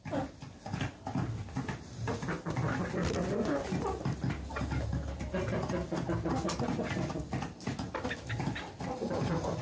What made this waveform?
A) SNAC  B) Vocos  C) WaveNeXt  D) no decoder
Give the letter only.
D